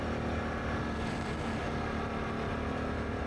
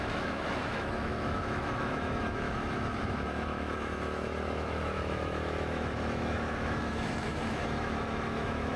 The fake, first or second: second